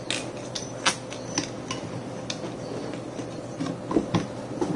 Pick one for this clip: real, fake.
real